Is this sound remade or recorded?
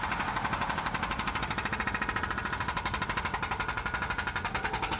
recorded